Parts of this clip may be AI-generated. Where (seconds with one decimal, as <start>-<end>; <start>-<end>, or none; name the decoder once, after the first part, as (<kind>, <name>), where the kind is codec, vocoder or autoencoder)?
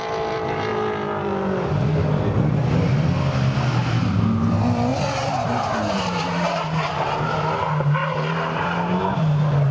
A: 4.9-6.9 (vocoder, BigVGAN v2); 8.0-9.0